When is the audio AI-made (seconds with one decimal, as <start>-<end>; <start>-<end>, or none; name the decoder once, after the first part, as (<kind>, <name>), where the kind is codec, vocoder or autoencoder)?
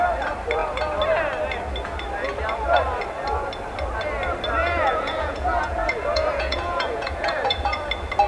4.6-7.8 (vocoder, Vocos)